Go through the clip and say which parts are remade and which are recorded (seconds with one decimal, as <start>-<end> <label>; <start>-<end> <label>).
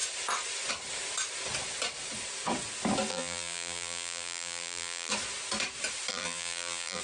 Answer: 0.0-3.1 recorded; 3.1-5.1 remade; 5.1-6.1 recorded; 6.1-7.0 remade